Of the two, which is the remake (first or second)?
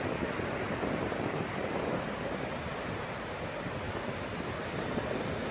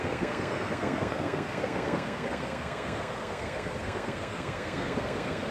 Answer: second